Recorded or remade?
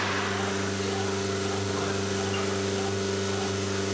recorded